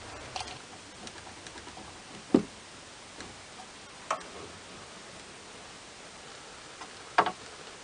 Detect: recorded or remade recorded